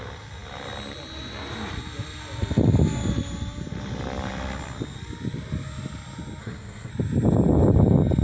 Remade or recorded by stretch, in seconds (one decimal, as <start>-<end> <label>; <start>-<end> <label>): 0.0-6.4 recorded; 6.4-6.9 remade; 6.9-8.2 recorded